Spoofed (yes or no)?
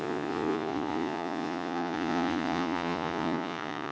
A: yes